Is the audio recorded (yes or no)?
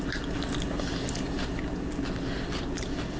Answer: yes